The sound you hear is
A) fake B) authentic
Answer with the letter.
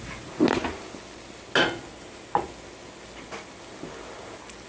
B